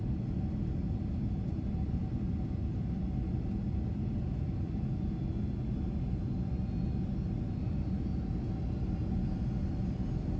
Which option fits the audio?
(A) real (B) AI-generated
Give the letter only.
A